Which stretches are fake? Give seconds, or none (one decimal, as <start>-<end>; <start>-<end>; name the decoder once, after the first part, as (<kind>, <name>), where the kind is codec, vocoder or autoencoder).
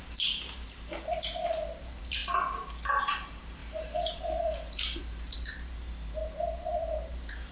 0.0-2.2 (vocoder, BigVGAN v2); 3.0-7.5